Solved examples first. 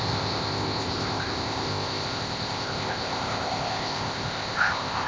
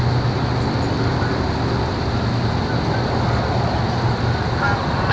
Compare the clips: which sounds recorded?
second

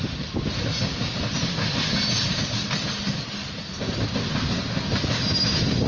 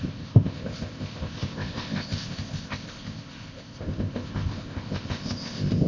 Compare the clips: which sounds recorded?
first